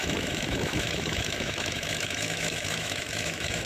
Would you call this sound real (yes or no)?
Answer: no